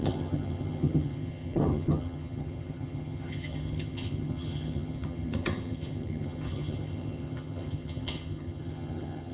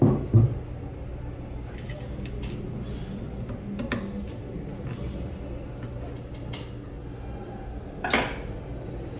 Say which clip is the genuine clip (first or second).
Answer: second